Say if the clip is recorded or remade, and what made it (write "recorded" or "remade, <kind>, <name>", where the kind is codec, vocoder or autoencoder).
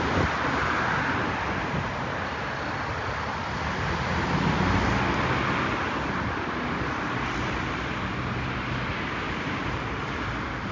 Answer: recorded